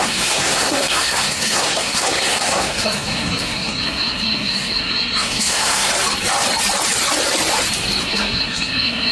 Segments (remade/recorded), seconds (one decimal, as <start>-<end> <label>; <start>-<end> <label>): 0.0-5.9 remade; 5.9-8.0 recorded; 8.0-9.1 remade